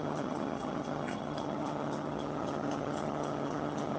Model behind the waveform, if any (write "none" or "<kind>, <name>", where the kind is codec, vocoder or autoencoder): vocoder, HiFi-GAN